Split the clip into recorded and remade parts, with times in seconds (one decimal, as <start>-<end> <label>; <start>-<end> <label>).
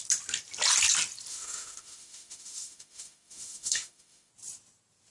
0.0-1.3 recorded; 1.3-4.3 remade; 4.3-5.1 recorded